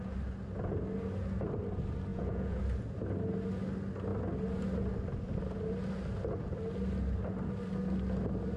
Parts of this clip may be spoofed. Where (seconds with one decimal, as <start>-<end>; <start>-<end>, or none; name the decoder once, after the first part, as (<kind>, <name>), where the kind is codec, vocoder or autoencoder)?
2.1-2.6 (vocoder, Vocos)